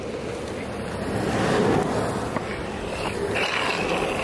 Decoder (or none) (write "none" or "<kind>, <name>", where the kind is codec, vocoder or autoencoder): none